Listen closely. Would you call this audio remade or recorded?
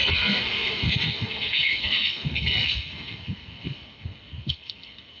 remade